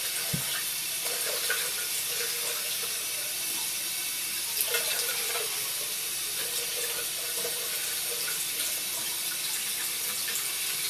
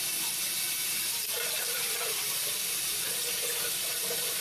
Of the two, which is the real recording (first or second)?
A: first